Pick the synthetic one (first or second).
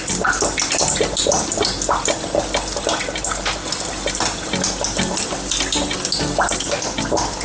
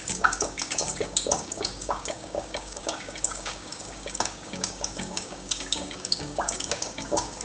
second